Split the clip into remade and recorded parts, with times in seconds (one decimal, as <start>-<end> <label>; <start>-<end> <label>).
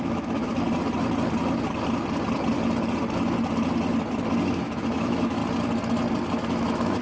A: 0.0-0.5 remade; 0.5-4.4 recorded; 4.4-5.4 remade; 5.4-6.3 recorded; 6.3-7.0 remade